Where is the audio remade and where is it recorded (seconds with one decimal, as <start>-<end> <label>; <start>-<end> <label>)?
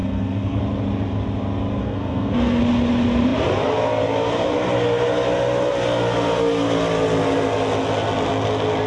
0.0-0.6 remade; 0.6-1.8 recorded; 1.8-2.6 remade; 2.6-8.9 recorded